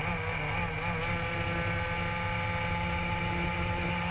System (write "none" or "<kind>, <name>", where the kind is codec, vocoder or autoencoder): none